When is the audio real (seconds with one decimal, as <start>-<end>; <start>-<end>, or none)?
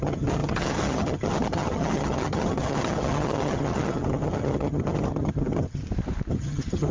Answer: 5.8-6.3